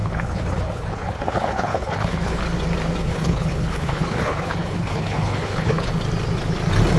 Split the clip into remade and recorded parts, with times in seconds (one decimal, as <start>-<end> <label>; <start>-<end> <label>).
0.0-2.4 remade; 2.4-3.0 recorded; 3.0-5.9 remade; 5.9-7.0 recorded